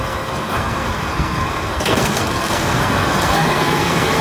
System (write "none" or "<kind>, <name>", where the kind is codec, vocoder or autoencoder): codec, SNAC